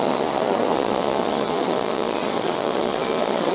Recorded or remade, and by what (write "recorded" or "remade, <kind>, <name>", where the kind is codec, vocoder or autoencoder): remade, vocoder, Vocos